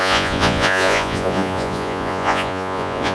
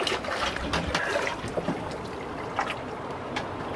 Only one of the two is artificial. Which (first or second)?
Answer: first